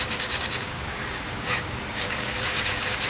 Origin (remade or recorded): remade